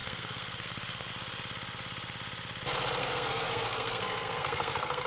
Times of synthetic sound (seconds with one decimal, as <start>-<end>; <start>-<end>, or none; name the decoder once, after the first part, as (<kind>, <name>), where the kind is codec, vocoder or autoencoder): 0.0-1.1 (codec, SNAC); 3.0-5.1